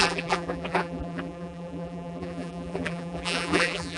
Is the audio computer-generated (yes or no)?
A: yes